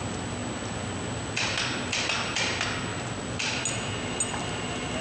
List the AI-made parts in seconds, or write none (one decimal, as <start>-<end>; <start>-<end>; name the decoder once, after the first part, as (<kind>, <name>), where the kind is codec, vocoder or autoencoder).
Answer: 2.9-3.6 (vocoder, BigVGAN v2)